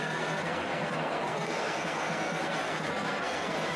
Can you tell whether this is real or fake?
fake